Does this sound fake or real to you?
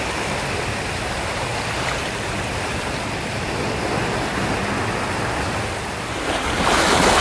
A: real